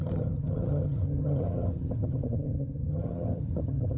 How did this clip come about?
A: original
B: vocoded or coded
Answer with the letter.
B